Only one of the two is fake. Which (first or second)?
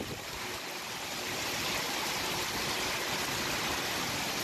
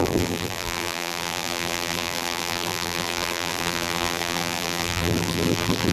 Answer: second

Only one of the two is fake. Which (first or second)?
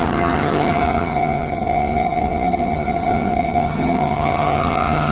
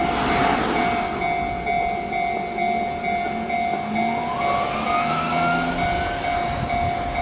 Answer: first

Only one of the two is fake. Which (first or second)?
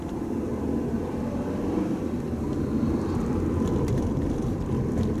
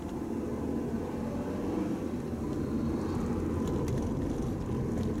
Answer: first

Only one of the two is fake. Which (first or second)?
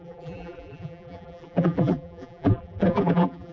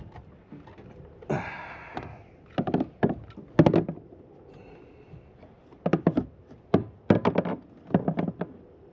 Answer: first